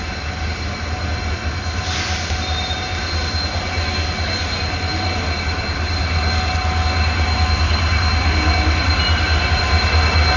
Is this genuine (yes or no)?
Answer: yes